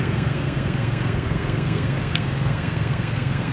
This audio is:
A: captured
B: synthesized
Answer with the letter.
B